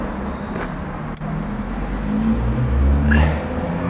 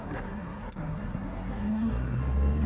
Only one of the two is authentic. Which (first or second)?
first